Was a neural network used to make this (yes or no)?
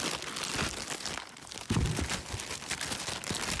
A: no